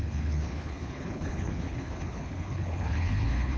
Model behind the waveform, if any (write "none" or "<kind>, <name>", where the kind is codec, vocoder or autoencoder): codec, HILCodec